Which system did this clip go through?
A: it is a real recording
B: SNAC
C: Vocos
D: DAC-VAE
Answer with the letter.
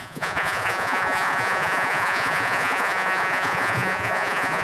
C